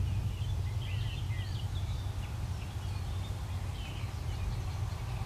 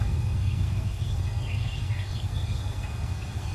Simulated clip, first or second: second